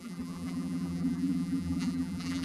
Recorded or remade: remade